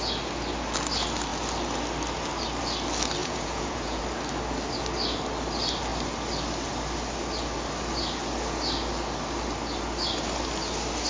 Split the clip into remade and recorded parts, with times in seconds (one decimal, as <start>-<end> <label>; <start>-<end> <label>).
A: 0.0-3.2 recorded; 3.2-4.0 remade; 4.0-11.1 recorded